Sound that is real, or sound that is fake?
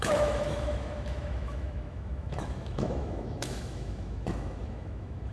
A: fake